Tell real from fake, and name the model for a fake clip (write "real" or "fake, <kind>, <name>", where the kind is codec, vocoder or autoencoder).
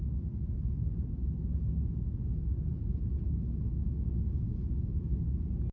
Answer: real